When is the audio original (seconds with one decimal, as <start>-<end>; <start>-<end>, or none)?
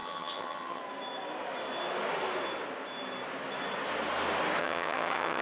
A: 0.8-4.6